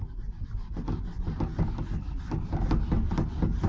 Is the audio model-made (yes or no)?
no